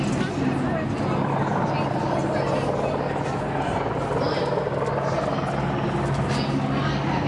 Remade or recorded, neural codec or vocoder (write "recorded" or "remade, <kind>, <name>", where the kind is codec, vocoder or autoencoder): recorded